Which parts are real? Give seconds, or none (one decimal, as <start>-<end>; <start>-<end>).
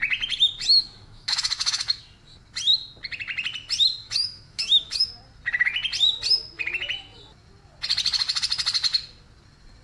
0.0-0.8; 2.0-4.0; 5.1-9.8